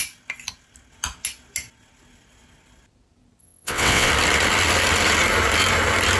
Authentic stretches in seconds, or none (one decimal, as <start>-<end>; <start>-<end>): 0.0-3.4; 4.1-6.2